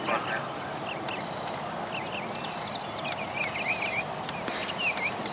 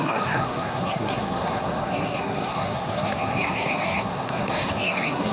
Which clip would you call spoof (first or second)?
second